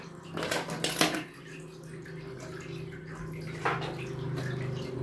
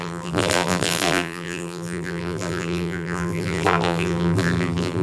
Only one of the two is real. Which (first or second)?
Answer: first